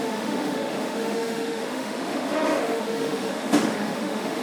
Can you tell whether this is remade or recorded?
remade